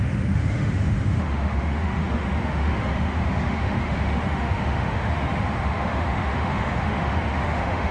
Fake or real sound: fake